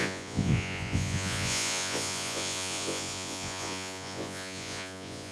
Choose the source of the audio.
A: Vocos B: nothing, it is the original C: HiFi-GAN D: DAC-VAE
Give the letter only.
A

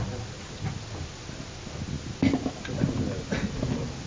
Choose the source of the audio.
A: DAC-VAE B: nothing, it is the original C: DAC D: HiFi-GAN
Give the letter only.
B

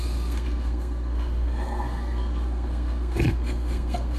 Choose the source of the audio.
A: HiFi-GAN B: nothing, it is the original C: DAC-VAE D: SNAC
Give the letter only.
D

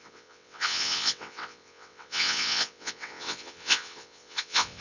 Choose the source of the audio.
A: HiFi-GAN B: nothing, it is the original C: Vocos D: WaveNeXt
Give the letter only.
D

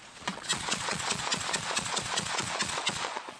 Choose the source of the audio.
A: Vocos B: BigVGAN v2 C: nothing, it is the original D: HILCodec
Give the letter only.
A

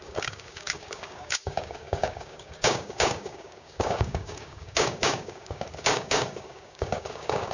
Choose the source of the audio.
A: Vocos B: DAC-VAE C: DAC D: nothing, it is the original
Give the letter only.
C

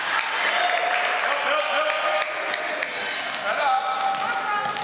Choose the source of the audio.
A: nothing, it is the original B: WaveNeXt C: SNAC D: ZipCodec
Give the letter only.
A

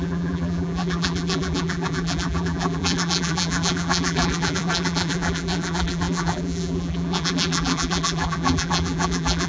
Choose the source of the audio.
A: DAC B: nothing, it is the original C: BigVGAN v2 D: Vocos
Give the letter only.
C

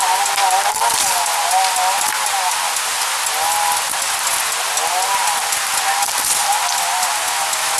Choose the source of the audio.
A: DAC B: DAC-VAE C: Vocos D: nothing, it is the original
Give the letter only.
D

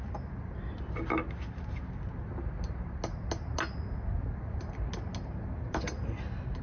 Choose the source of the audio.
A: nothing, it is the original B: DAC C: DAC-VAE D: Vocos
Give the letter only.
A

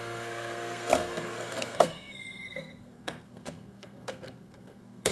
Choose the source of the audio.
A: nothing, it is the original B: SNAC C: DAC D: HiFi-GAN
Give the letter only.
B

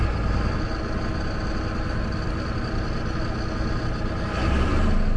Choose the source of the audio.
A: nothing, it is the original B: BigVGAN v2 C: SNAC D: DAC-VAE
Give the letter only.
A